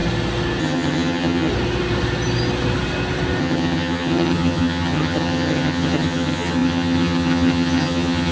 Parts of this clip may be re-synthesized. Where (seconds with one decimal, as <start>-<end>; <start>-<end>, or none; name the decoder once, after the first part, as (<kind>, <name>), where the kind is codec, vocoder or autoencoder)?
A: 0.6-1.5 (vocoder, HiFi-GAN); 3.4-8.3